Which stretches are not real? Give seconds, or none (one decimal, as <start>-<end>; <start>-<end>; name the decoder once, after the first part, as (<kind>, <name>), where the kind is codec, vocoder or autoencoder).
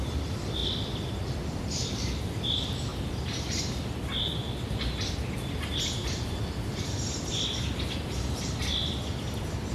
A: 0.0-8.8 (vocoder, BigVGAN v2)